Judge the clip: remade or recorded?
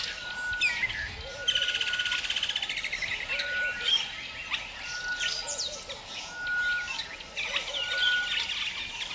recorded